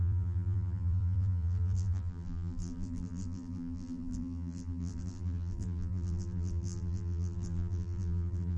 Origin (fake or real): fake